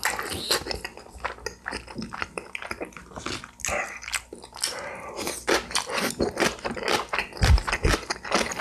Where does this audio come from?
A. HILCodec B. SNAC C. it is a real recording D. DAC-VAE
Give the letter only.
C